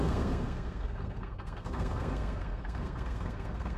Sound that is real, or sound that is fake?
fake